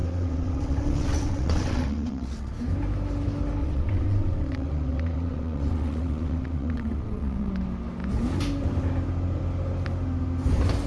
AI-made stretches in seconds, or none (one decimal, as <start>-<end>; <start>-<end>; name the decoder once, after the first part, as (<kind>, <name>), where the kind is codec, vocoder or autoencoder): 0.0-2.5 (vocoder, WaveNeXt); 3.6-7.5

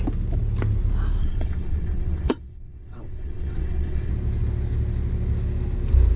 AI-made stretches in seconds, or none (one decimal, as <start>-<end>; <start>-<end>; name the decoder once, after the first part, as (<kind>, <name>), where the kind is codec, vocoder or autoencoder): 1.2-4.1 (vocoder, WaveNeXt)

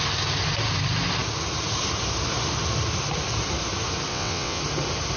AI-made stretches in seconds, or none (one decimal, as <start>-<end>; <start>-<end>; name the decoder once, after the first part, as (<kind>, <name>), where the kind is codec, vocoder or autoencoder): 4.1-4.6 (vocoder, WaveNeXt)

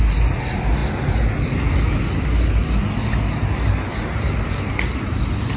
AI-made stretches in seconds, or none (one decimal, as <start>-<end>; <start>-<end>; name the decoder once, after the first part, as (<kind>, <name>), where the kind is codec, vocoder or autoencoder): none